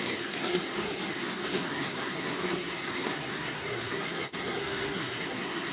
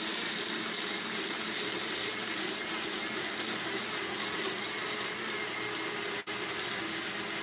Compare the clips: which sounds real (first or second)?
second